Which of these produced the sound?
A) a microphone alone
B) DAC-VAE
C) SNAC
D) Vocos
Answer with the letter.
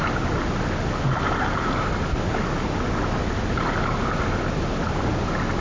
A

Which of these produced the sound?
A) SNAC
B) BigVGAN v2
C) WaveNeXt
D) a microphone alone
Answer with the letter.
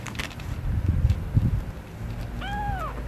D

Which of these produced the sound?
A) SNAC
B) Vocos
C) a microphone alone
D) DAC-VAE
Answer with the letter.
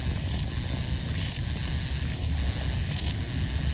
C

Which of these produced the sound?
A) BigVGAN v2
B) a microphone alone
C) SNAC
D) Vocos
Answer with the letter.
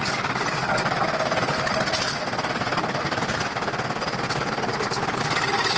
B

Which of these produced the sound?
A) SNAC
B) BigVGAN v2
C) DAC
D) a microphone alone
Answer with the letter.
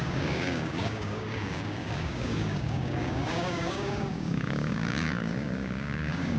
C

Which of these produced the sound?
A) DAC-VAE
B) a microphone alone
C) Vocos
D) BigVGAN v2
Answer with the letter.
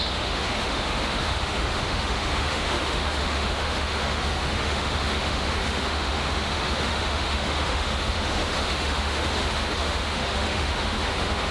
A